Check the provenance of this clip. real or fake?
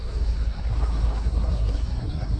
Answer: fake